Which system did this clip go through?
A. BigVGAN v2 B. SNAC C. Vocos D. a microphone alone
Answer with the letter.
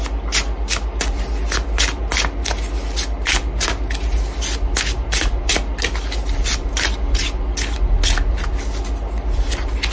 D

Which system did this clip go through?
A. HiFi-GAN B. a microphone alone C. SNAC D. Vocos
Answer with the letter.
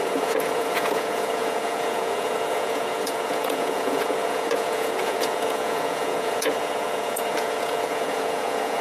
D